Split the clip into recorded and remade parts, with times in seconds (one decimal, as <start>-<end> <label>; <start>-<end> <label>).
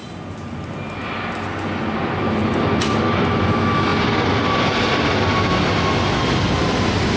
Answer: 0.0-7.2 recorded